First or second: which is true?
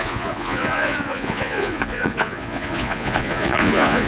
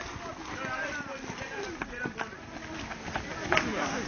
second